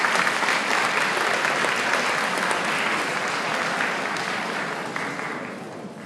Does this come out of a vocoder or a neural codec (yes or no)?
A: no